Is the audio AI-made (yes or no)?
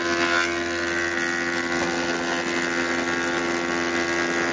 no